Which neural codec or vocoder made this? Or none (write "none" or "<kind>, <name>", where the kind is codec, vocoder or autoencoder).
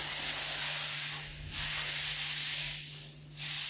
none